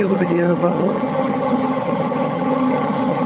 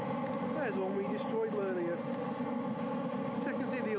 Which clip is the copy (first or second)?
first